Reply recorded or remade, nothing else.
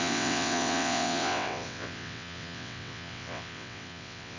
remade